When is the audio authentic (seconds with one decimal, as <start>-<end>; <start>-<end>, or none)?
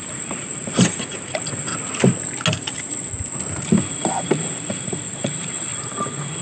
1.7-2.6; 3.1-3.6